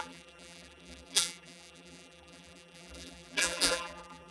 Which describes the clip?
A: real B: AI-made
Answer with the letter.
B